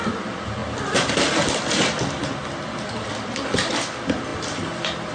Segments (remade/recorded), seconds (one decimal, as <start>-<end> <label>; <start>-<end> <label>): 0.0-5.1 remade